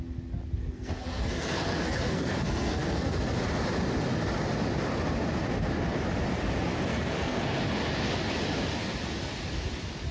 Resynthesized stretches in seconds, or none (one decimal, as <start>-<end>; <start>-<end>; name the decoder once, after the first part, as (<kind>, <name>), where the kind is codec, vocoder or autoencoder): 0.6-3.2 (codec, SNAC); 6.9-7.6